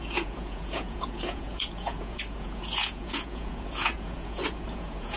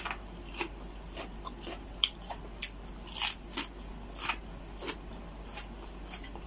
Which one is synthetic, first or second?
first